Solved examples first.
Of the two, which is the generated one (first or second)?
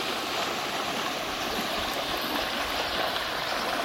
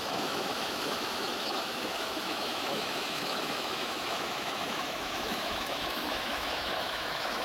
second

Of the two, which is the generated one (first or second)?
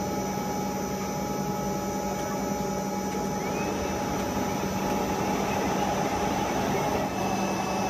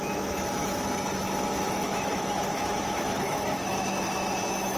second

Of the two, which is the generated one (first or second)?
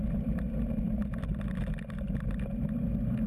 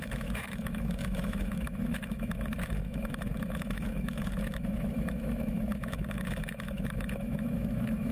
second